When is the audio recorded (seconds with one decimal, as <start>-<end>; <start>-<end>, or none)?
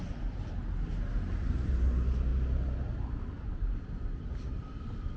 0.0-5.2